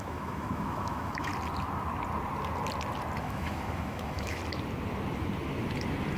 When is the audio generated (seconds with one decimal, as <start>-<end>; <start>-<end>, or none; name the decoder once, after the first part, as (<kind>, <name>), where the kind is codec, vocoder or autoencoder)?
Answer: 0.0-1.3 (autoencoder, DAC-VAE); 3.2-4.4